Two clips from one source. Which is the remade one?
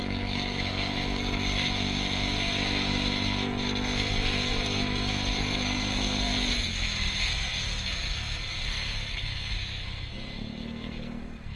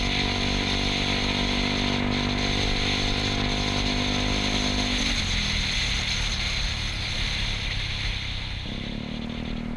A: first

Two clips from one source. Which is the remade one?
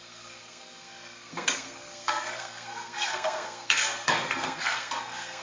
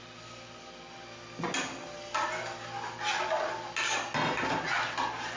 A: first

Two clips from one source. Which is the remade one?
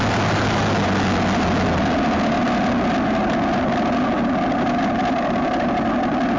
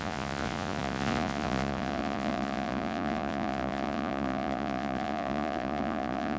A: second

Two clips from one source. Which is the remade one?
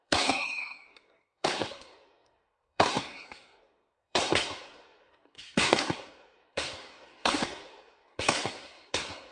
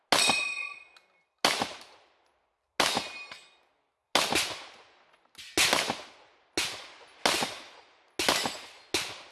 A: first